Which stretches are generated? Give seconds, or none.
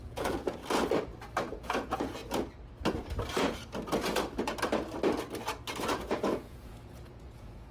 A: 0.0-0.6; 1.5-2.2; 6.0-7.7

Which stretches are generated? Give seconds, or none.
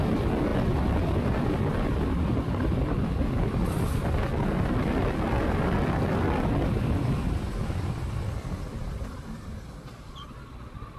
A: none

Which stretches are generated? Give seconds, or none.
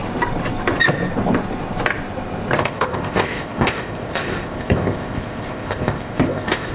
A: 2.6-6.7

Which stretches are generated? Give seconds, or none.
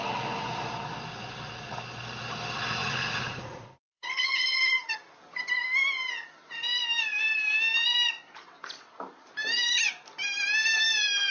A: 2.8-4.6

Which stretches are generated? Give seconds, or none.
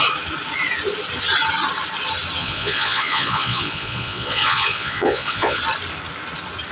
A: 2.4-5.6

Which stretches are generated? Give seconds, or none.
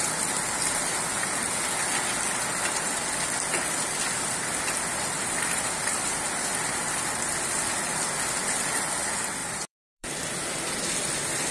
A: 9.4-10.3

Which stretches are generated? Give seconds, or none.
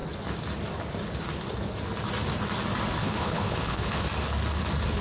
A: 3.0-4.0